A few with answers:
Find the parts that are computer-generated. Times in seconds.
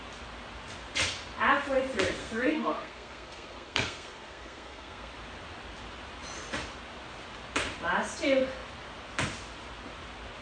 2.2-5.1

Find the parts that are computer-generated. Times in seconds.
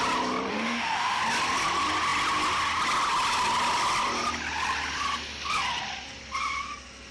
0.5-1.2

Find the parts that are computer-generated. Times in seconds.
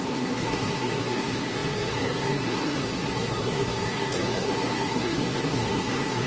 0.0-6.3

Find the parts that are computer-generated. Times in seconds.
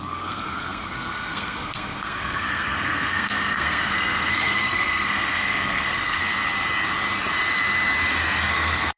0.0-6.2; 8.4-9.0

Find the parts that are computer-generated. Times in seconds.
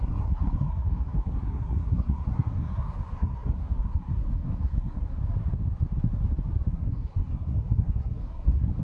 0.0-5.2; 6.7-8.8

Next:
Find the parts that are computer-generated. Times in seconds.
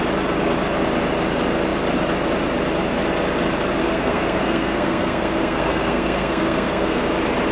3.8-7.0